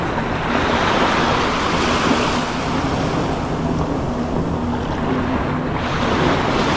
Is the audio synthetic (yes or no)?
no